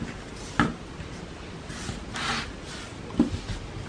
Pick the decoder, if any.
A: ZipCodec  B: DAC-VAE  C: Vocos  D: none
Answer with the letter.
D